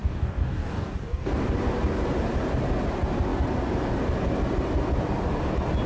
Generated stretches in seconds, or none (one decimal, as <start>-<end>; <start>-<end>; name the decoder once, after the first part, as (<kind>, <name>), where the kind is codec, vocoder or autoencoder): 0.0-1.3 (codec, DAC)